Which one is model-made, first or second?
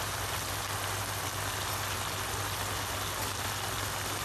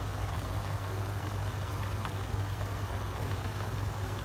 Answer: second